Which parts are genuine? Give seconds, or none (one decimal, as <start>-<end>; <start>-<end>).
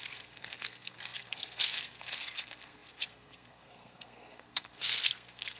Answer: none